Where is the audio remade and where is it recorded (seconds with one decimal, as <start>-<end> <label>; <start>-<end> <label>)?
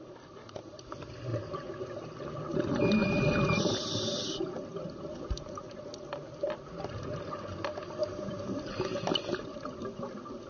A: 0.0-1.3 recorded; 1.3-2.6 remade; 2.6-3.0 recorded; 3.0-3.6 remade; 3.6-4.7 recorded; 4.7-5.6 remade; 5.6-8.0 recorded; 8.0-8.8 remade; 8.8-10.5 recorded